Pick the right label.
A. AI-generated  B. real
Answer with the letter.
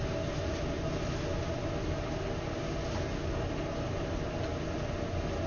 B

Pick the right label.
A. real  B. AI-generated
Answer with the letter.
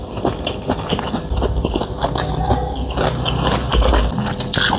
A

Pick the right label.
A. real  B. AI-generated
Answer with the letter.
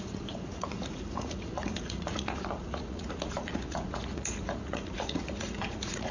B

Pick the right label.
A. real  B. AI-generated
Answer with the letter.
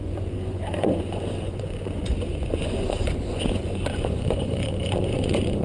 B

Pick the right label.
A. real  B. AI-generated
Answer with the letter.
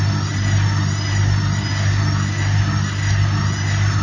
A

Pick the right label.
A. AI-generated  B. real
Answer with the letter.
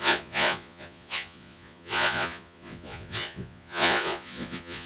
A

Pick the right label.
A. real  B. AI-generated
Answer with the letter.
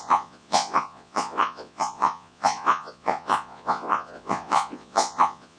B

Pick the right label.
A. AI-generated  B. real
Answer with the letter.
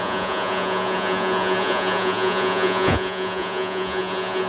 A